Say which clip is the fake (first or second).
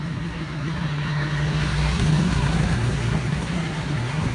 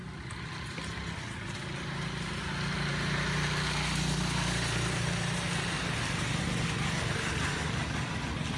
first